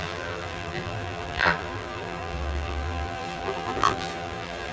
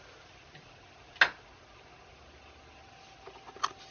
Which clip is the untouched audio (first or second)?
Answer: second